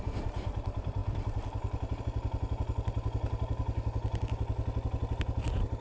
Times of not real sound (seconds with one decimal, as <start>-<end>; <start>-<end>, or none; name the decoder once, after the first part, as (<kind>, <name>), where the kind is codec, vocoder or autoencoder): none